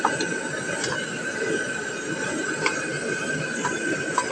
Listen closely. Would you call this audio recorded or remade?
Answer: recorded